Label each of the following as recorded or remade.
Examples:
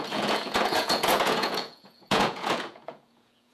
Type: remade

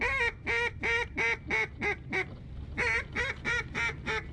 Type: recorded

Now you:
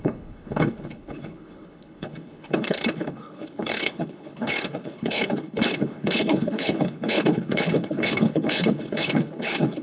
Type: remade